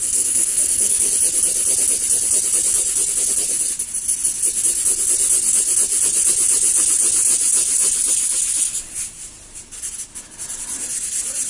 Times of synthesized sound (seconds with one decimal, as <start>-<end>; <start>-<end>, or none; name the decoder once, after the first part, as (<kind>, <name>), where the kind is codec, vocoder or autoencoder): 0.0-1.1 (codec, SNAC)